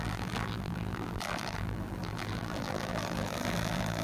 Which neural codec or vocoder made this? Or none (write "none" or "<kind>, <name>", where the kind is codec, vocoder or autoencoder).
vocoder, BigVGAN v2